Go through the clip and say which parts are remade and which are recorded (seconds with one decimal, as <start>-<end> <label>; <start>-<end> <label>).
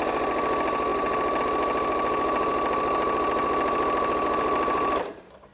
0.0-5.5 recorded